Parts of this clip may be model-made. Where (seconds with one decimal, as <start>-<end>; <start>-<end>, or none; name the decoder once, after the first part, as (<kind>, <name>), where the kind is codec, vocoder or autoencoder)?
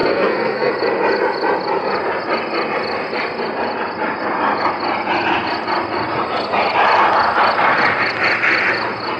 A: 0.0-0.7 (codec, SNAC)